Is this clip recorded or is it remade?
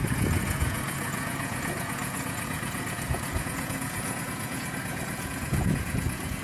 remade